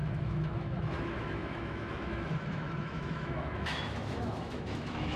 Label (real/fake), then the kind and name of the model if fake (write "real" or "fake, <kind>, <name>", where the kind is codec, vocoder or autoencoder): fake, autoencoder, DAC-VAE